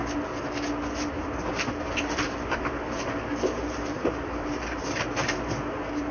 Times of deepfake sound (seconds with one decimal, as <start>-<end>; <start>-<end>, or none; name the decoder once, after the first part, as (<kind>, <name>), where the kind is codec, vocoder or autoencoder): 1.1-6.1 (vocoder, BigVGAN v2)